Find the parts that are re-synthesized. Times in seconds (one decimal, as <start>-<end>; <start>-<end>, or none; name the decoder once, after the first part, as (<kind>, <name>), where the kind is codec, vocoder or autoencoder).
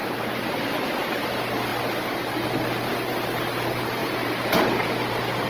0.0-0.6 (vocoder, BigVGAN v2); 4.0-5.5